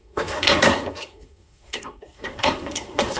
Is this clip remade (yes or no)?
yes